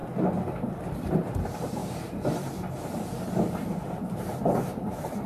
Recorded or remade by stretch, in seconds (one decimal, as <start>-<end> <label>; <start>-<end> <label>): 0.0-1.8 recorded; 1.8-5.3 remade